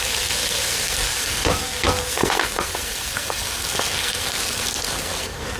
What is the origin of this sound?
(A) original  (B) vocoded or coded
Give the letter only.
B